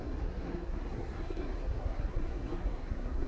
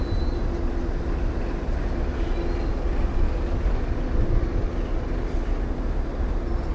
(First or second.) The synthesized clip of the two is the first